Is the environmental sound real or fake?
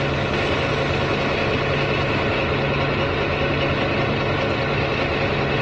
real